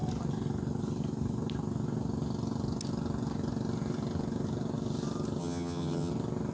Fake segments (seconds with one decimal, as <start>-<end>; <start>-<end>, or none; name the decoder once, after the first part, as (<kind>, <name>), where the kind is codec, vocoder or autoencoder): 5.4-6.1 (vocoder, HiFi-GAN)